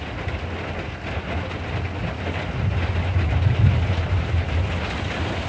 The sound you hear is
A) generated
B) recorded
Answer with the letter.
B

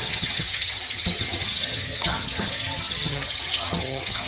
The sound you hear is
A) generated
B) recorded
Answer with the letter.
A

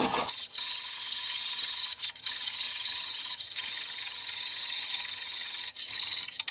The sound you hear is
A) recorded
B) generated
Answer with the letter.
B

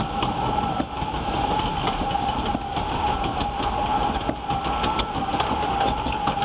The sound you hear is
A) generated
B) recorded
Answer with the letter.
B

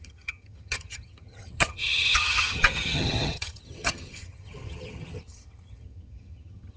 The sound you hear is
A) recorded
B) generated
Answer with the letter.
B